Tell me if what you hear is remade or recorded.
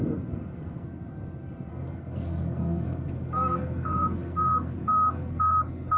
remade